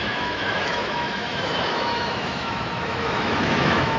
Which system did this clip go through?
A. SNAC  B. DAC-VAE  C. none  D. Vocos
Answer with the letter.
B